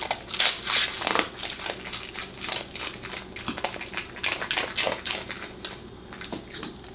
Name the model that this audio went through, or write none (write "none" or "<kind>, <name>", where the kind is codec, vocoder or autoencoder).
none